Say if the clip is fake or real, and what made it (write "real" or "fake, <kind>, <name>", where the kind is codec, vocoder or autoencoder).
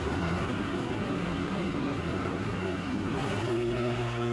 fake, codec, SNAC